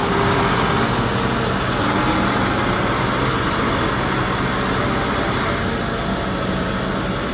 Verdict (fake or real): real